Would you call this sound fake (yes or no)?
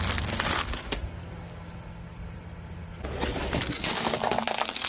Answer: no